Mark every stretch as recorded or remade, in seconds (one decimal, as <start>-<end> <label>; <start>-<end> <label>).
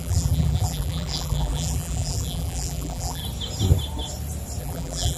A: 0.0-3.2 remade; 3.2-4.6 recorded; 4.6-5.2 remade